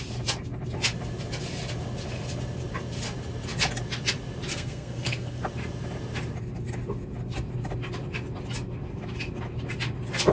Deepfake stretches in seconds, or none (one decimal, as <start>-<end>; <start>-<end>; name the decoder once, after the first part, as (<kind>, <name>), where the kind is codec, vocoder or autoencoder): 4.5-5.4 (codec, SNAC)